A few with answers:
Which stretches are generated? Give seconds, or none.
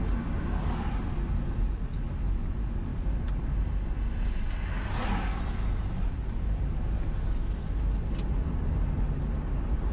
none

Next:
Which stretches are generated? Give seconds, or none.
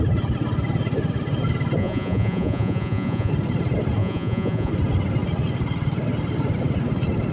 1.8-3.3 (vocoder, Vocos); 4.0-4.7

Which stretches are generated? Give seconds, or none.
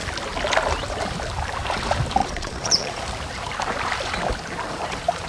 2.2-3.0 (vocoder, Vocos)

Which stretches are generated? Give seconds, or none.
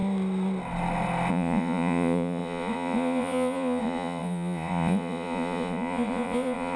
1.3-6.8 (vocoder, Vocos)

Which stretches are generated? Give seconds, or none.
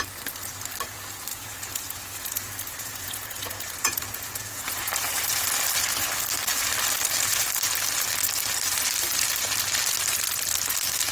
1.3-4.9 (vocoder, Vocos)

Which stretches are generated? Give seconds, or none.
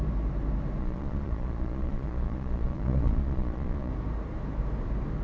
0.8-3.9 (vocoder, Vocos)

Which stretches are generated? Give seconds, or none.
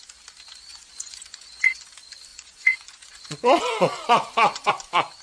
0.7-1.8 (vocoder, Vocos); 2.3-4.7